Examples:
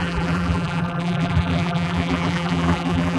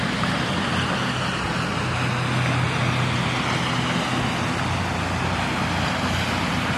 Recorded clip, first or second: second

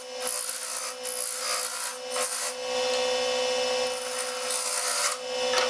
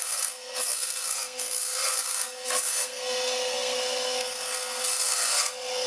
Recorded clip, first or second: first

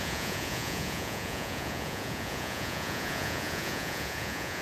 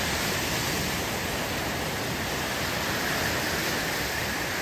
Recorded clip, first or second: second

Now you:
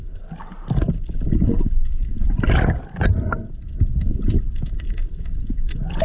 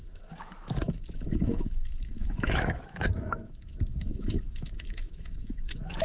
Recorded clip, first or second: first